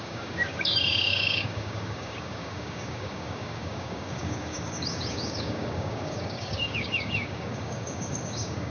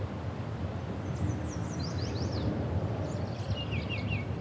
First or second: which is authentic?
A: second